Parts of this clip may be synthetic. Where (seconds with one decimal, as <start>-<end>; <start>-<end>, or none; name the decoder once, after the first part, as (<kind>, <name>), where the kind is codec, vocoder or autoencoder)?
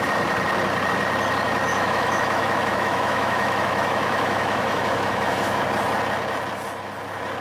1.7-5.6 (autoencoder, DAC-VAE)